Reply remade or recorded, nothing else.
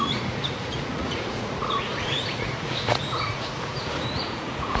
remade